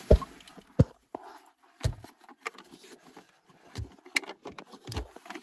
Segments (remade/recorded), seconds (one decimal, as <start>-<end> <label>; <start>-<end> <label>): 0.0-1.3 recorded; 1.3-2.5 remade; 2.5-5.4 recorded